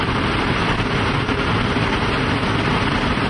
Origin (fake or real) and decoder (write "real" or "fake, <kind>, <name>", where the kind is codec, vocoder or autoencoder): real